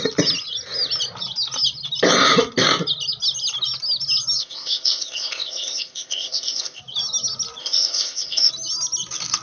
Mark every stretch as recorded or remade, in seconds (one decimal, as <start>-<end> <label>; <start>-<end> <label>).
0.0-4.4 recorded; 4.4-6.8 remade; 6.8-7.6 recorded; 7.6-8.5 remade; 8.5-9.4 recorded